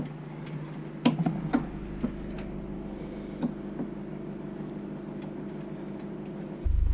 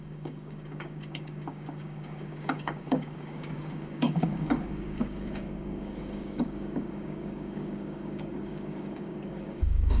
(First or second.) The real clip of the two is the first